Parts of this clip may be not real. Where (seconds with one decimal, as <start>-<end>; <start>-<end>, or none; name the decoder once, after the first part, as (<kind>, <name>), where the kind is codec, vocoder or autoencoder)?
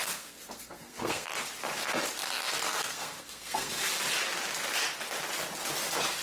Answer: 0.0-1.3 (codec, SNAC); 2.8-3.8